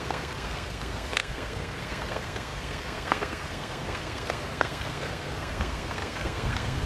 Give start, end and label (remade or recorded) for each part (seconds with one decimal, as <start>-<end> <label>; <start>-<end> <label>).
0.0-6.9 remade